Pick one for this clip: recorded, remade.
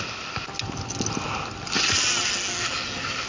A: recorded